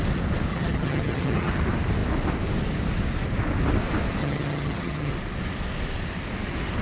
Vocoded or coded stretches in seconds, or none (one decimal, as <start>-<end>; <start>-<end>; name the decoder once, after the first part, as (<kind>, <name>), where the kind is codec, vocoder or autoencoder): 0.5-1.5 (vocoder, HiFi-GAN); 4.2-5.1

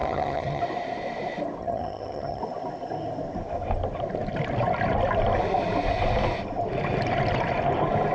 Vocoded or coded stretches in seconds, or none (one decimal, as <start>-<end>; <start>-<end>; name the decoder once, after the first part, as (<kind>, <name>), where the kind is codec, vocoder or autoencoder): 0.0-0.6 (vocoder, HiFi-GAN); 1.6-2.4

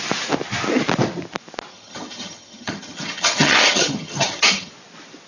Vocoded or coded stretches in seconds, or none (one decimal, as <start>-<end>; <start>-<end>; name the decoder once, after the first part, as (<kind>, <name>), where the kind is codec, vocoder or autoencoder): 1.7-4.7 (vocoder, HiFi-GAN)

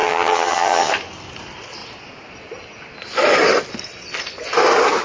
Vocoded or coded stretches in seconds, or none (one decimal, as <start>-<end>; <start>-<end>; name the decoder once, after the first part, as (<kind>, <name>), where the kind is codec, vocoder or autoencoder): 0.0-0.9 (vocoder, HiFi-GAN)